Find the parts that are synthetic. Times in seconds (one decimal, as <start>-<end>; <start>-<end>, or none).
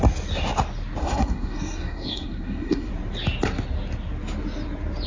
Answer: 1.0-2.9